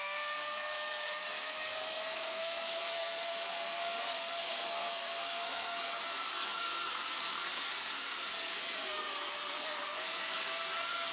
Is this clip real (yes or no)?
no